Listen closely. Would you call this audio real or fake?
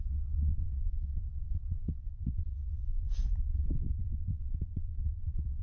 fake